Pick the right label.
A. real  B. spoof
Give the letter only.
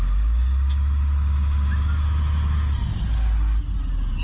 A